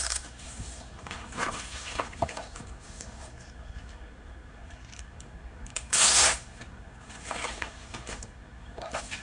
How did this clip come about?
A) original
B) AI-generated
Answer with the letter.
B